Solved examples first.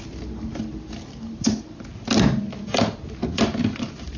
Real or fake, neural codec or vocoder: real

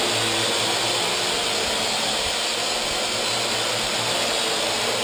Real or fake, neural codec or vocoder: real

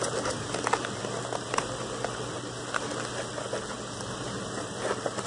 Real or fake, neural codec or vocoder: real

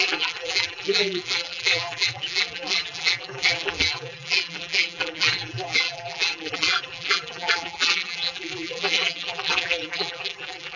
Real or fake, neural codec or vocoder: fake, vocoder, BigVGAN v2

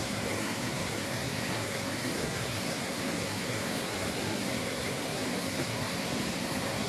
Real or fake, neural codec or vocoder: fake, codec, SNAC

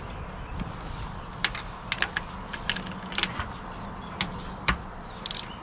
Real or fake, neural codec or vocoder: real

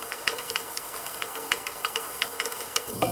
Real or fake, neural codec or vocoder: fake, codec, SNAC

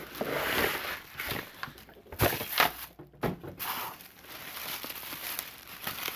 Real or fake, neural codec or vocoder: fake, vocoder, BigVGAN v2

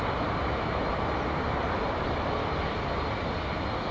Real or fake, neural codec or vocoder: real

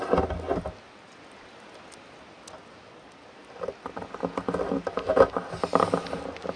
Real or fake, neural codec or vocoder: real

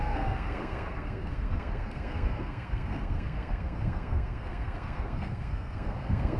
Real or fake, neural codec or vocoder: fake, codec, SNAC